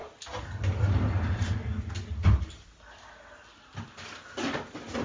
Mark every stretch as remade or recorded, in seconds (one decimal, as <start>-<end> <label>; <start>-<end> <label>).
0.0-5.0 recorded